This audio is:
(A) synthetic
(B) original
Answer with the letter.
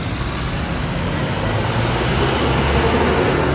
B